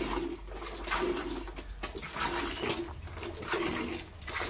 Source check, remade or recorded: recorded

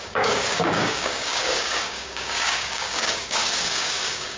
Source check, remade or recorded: remade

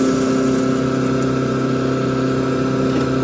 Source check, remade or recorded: recorded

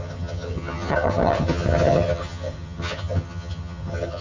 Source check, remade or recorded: remade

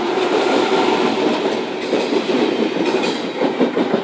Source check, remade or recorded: remade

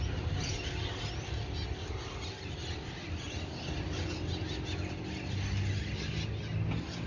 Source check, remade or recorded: recorded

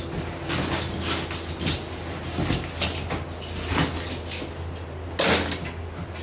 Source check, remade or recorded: recorded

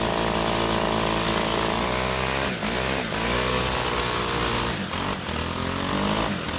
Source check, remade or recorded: recorded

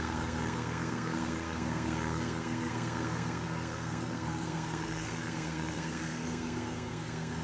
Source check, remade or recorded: remade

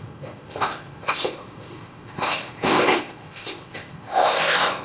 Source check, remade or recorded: remade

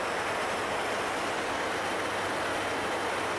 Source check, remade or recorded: recorded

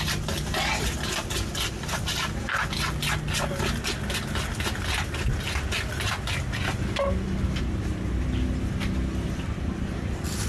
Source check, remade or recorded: recorded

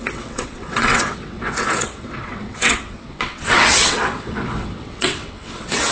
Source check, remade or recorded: remade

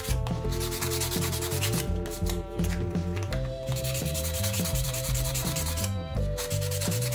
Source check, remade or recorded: remade